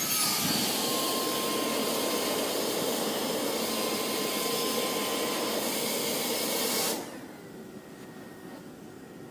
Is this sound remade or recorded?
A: recorded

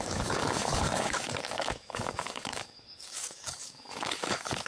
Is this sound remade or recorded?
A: remade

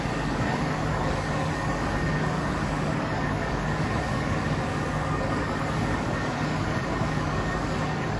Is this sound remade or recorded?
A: remade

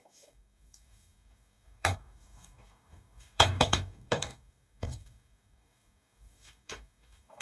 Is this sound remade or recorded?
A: remade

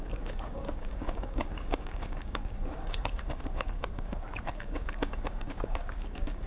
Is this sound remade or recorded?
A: remade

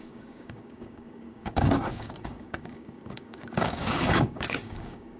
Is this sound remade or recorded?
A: remade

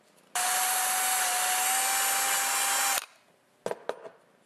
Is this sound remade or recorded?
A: recorded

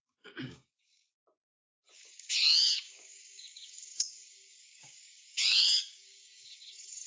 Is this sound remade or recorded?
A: remade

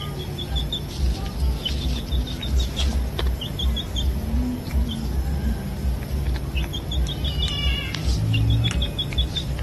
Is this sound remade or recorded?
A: recorded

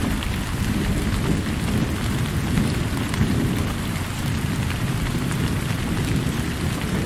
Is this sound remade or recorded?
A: recorded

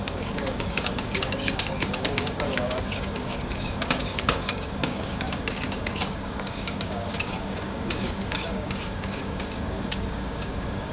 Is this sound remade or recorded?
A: remade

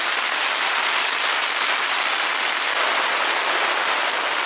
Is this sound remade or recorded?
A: recorded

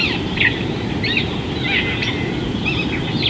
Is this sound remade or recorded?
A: recorded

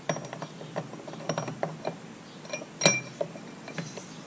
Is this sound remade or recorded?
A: recorded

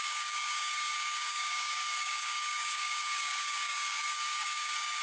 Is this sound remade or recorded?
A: remade